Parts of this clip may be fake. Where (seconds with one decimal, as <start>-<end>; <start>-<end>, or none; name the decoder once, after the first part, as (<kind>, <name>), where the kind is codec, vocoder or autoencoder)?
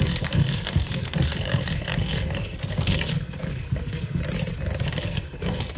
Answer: 0.0-4.2 (codec, SNAC); 4.8-5.8